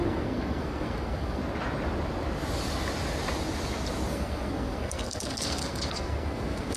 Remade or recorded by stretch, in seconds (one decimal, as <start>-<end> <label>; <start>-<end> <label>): 0.0-1.4 remade; 1.4-4.1 recorded; 4.1-6.8 remade